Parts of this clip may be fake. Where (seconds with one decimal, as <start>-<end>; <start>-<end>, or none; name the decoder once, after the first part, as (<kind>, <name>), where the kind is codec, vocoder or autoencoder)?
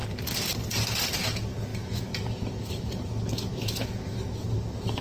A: 1.2-5.0 (autoencoder, DAC-VAE)